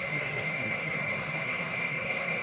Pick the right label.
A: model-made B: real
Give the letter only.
A